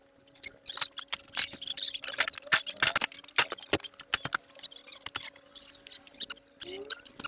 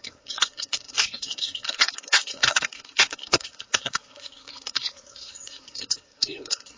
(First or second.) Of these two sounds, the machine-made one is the second